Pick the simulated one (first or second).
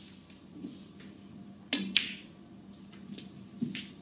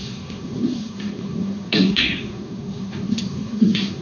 second